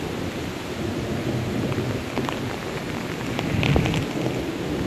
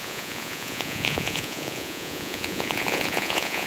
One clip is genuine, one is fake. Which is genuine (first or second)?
first